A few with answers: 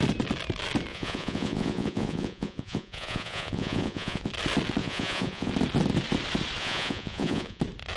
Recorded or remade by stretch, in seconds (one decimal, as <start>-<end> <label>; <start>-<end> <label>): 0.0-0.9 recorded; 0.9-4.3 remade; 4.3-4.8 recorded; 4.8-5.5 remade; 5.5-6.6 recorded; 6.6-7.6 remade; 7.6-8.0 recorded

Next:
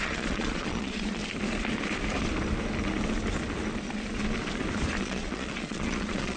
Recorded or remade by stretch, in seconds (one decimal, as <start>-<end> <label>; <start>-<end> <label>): 0.0-1.2 remade; 1.2-5.0 recorded; 5.0-6.4 remade

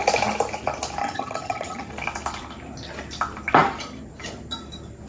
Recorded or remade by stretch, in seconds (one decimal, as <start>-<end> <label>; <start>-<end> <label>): 0.0-1.0 recorded; 1.0-1.9 remade; 1.9-5.1 recorded

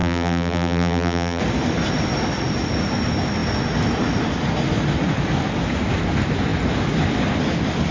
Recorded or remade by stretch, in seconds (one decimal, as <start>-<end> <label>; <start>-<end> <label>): 0.0-1.4 remade; 1.4-7.9 recorded

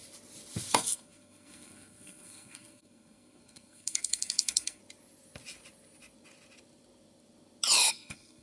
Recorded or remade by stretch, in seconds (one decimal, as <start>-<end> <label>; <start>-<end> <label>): 0.0-0.7 recorded; 0.7-4.8 remade; 4.8-7.9 recorded; 7.9-8.4 remade

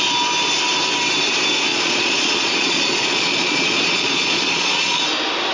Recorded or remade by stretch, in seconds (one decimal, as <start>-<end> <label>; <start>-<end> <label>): 0.0-1.7 recorded; 1.7-5.0 remade; 5.0-5.5 recorded